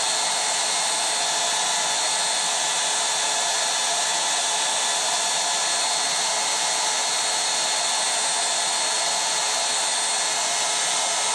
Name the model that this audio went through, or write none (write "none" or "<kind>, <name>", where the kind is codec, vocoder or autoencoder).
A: none